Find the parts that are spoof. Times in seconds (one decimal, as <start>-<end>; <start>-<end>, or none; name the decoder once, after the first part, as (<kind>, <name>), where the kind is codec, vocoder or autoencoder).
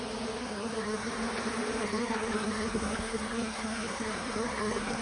0.4-1.1 (codec, SNAC); 1.8-5.0